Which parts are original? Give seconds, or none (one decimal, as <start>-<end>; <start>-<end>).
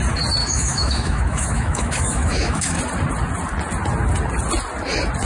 0.0-0.4; 2.8-5.2